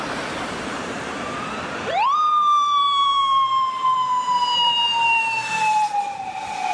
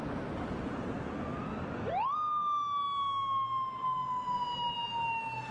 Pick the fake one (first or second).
first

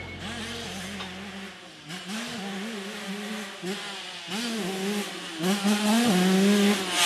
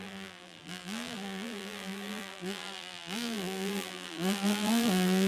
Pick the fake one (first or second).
second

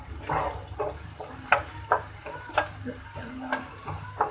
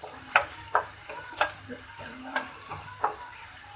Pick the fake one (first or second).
second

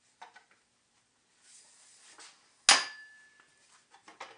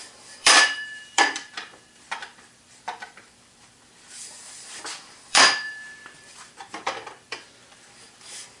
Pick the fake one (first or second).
second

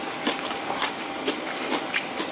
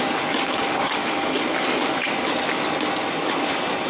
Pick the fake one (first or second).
first